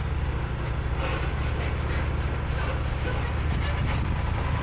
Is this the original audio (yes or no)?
yes